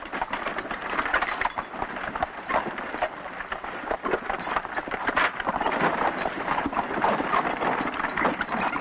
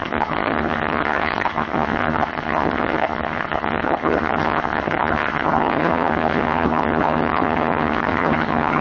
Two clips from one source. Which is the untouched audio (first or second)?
first